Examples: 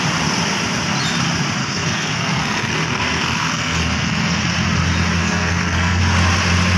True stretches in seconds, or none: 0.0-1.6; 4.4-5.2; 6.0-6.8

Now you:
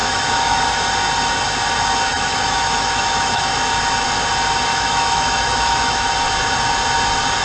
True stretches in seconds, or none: 0.6-2.1; 3.5-4.7; 6.1-7.4